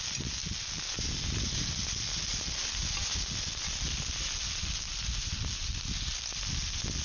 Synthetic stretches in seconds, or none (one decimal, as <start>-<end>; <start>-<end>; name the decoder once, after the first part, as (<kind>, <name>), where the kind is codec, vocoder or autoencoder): none